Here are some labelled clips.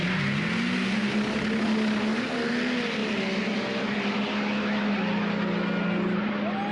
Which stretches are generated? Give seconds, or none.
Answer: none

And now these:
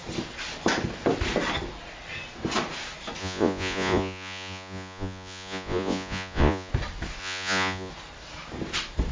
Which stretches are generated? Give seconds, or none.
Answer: 3.2-6.7 (vocoder, Vocos); 7.2-7.9

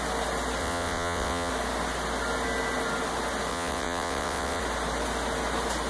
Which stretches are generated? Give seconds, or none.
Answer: 0.6-1.5 (vocoder, WaveNeXt); 3.5-4.6

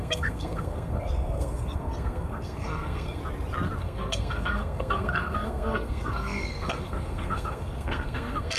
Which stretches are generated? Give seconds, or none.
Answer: 0.0-3.2 (codec, SNAC); 3.8-8.6

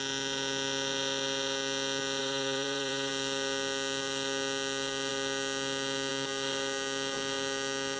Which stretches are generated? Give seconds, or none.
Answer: 2.2-3.1 (vocoder, Vocos)

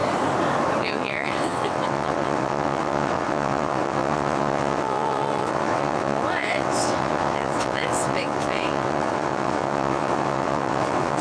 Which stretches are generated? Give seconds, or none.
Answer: 0.8-11.2 (vocoder, WaveNeXt)

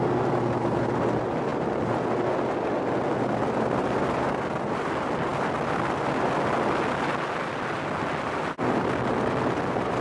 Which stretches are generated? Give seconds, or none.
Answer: none